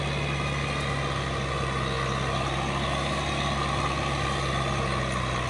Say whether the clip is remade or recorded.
recorded